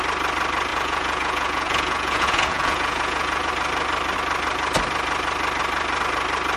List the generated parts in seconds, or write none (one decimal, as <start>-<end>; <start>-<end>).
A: 0.7-3.5